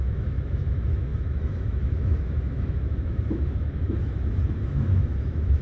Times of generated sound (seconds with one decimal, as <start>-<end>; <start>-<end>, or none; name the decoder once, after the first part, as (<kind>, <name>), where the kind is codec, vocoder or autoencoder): 0.0-5.6 (autoencoder, DAC-VAE)